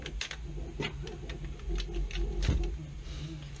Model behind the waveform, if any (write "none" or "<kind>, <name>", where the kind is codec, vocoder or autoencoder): none